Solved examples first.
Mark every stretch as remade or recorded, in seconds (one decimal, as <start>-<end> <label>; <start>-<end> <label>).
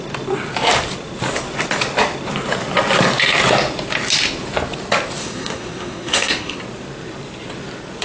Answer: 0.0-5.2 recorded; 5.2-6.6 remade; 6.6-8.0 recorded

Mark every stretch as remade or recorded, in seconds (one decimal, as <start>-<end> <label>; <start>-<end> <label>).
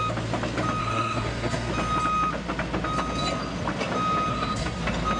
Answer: 0.0-0.8 recorded; 0.8-1.7 remade; 1.7-4.3 recorded; 4.3-4.8 remade; 4.8-5.2 recorded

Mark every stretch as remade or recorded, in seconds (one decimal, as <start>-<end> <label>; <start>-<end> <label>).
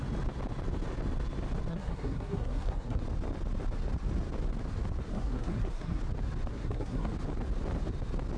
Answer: 0.0-1.7 recorded; 1.7-3.0 remade; 3.0-5.1 recorded; 5.1-6.0 remade; 6.0-6.5 recorded; 6.5-7.1 remade; 7.1-8.4 recorded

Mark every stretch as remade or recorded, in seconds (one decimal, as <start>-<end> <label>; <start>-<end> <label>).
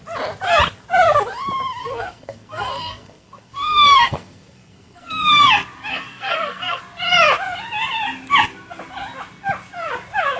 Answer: 0.0-1.8 recorded; 1.8-5.5 remade; 5.5-5.9 recorded; 5.9-6.8 remade; 6.8-10.4 recorded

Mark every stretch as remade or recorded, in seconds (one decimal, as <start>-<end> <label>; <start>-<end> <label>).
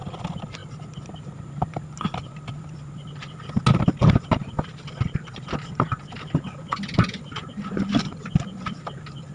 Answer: 0.0-9.3 recorded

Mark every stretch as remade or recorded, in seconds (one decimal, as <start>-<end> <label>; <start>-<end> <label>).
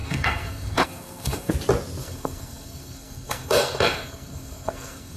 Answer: 0.0-1.5 remade; 1.5-2.0 recorded; 2.0-5.2 remade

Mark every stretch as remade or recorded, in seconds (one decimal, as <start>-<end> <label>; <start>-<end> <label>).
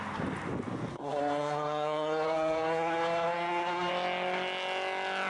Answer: 0.0-0.9 recorded; 0.9-3.9 remade; 3.9-5.3 recorded